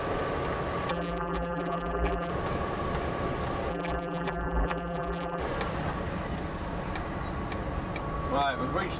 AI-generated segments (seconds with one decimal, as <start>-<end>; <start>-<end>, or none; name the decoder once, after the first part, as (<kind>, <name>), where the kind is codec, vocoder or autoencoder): 0.9-2.3 (vocoder, BigVGAN v2); 3.7-5.4